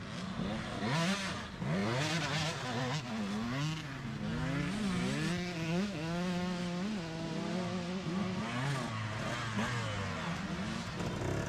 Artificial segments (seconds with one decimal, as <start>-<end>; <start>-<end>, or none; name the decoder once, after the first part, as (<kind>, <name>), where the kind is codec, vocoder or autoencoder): 5.7-6.6 (autoencoder, DAC-VAE)